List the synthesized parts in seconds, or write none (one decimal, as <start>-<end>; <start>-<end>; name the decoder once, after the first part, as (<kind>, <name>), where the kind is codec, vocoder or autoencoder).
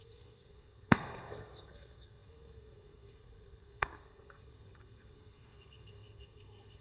0.0-6.8 (codec, SNAC)